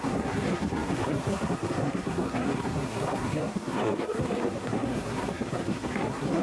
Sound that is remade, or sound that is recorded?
remade